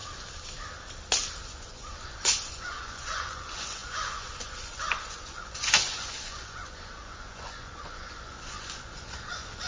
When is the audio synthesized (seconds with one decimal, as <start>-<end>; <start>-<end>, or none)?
1.4-9.7